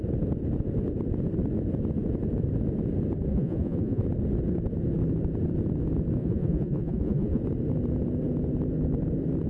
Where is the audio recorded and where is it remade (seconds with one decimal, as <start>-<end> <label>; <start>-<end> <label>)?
0.0-3.3 recorded; 3.3-4.0 remade; 4.0-6.2 recorded; 6.2-7.4 remade; 7.4-9.5 recorded